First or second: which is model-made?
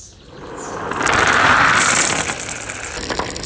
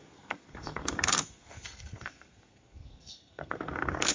second